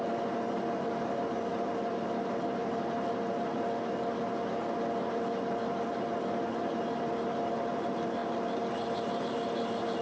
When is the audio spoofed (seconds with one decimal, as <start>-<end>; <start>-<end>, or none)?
none